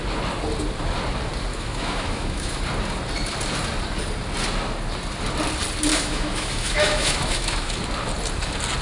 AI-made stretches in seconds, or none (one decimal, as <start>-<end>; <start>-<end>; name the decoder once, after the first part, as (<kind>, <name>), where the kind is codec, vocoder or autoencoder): 1.5-2.6 (autoencoder, DAC-VAE); 5.9-7.7